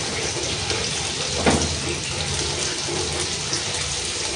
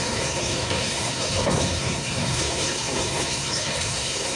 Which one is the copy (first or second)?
second